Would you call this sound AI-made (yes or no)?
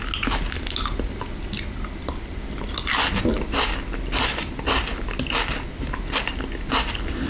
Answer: no